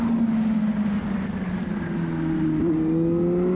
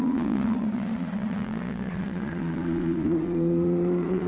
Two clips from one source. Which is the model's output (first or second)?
second